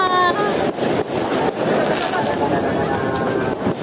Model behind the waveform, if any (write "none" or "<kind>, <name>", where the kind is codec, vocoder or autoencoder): none